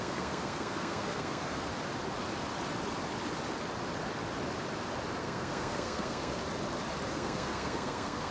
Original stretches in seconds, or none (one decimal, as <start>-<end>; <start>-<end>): 1.7-5.2; 6.4-7.1